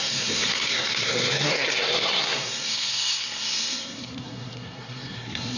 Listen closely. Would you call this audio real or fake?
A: fake